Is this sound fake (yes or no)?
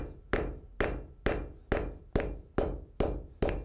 no